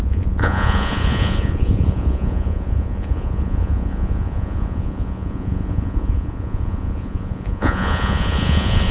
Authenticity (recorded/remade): remade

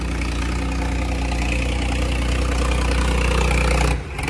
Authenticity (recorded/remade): recorded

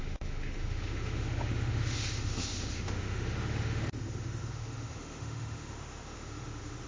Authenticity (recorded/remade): remade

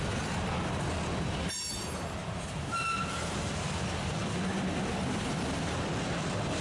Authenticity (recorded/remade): recorded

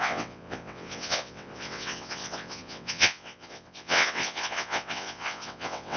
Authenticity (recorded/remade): remade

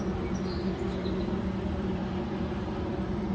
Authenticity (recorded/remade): recorded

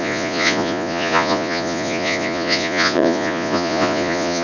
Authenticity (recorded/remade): remade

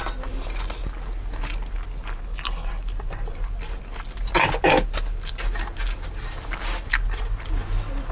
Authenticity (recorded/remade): recorded